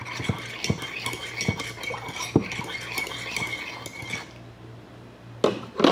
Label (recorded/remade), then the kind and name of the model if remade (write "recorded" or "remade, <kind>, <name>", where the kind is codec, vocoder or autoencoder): recorded